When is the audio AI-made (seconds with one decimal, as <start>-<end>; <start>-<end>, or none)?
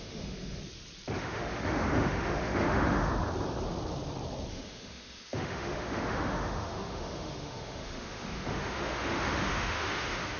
0.0-0.6; 1.2-3.1; 4.5-10.4